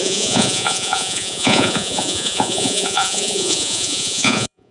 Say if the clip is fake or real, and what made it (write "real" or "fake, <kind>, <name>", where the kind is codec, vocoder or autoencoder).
fake, vocoder, Vocos